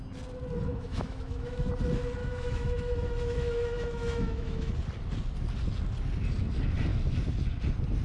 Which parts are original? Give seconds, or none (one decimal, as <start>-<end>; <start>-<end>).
0.0-0.7; 1.7-2.2; 4.7-8.0